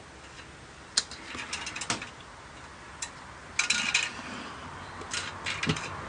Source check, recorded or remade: recorded